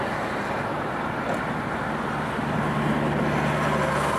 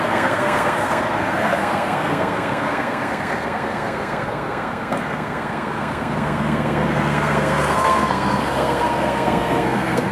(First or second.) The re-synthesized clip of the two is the second